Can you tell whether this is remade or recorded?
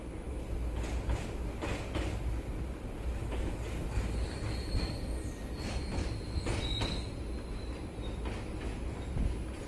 recorded